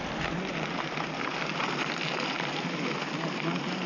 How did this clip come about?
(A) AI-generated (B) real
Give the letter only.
B